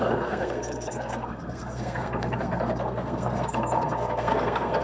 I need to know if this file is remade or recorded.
remade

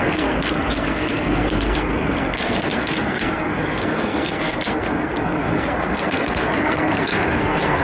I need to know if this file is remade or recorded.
remade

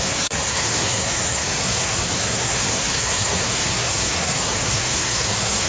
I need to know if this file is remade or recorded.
remade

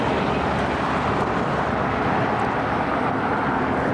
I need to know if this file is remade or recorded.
recorded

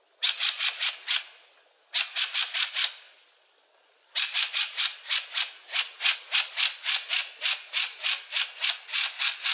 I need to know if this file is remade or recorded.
recorded